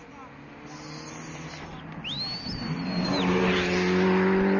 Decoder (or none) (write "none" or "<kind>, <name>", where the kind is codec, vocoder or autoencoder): none